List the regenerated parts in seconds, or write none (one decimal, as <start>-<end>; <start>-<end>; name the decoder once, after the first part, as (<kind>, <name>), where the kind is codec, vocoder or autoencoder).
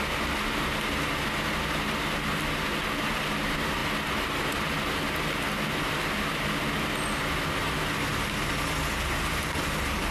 none